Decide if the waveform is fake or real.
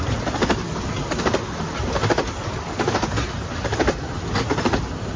real